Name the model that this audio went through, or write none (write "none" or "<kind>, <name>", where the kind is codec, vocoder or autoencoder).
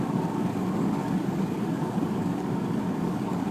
codec, DAC